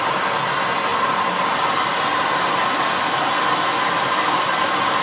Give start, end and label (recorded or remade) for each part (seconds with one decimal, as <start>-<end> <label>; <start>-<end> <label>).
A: 0.0-5.0 recorded